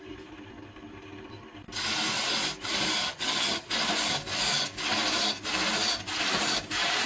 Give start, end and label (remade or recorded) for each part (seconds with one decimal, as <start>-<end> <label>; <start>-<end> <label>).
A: 0.0-3.0 recorded; 3.0-3.7 remade; 3.7-7.1 recorded